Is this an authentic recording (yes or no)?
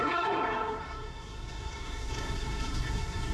no